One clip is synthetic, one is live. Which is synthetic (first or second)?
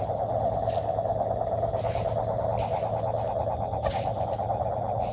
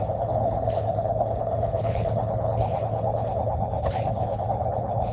second